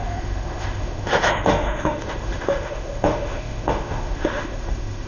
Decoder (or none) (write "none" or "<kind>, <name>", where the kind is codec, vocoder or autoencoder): autoencoder, DAC-VAE